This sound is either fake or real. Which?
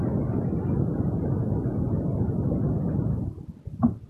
real